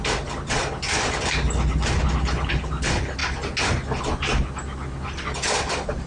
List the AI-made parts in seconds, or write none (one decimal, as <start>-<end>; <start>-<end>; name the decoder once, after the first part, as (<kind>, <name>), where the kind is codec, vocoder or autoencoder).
none